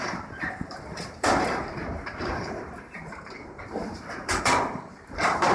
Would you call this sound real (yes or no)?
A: no